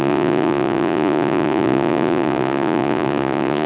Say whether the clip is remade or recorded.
remade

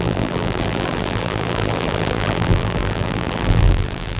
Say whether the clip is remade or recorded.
remade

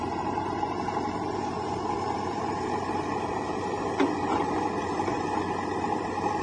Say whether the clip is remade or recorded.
remade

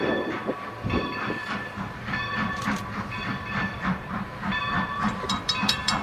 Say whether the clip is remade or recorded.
remade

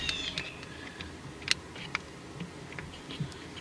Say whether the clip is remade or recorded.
recorded